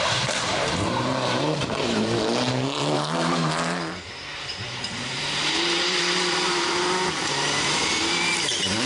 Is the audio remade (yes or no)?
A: yes